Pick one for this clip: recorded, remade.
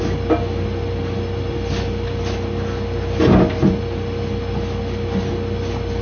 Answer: recorded